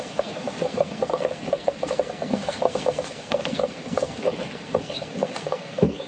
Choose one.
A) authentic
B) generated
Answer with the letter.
B